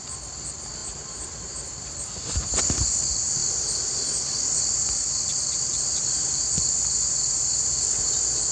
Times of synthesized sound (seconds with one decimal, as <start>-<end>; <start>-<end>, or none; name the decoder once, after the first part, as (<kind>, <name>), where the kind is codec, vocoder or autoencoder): 0.8-2.5 (vocoder, BigVGAN v2); 5.7-6.4